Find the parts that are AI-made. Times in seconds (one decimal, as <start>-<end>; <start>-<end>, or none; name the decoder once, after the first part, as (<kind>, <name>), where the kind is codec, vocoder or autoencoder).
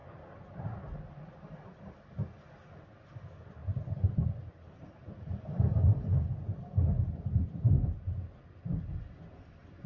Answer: 3.6-8.0 (vocoder, BigVGAN v2)